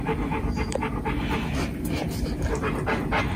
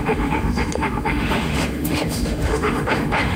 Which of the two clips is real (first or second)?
first